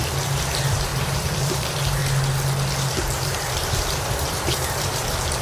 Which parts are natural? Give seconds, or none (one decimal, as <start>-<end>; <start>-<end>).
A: 2.0-2.7